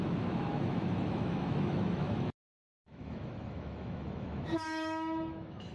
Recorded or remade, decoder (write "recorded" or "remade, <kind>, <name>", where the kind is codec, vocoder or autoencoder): remade, autoencoder, DAC-VAE